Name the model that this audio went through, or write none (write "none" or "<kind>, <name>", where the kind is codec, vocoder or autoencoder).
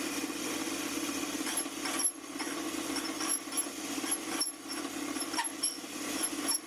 none